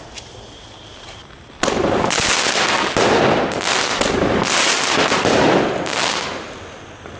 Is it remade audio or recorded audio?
recorded